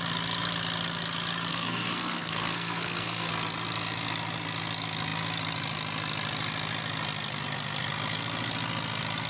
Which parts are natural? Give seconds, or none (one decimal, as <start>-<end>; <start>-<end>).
0.0-1.5; 3.3-9.3